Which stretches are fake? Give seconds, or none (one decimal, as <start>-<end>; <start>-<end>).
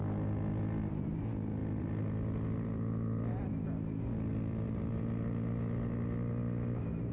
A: 1.6-4.9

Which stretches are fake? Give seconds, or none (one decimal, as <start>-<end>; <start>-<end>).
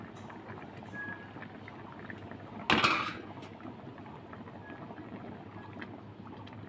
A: none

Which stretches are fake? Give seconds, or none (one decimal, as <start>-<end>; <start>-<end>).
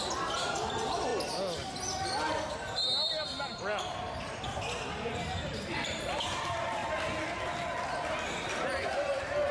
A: 0.0-1.1; 5.4-6.8